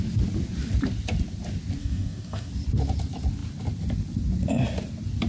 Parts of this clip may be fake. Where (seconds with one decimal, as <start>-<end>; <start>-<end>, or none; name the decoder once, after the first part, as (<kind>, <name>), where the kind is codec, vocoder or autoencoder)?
1.8-2.5 (codec, DAC)